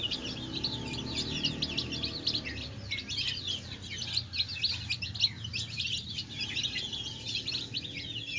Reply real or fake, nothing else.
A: real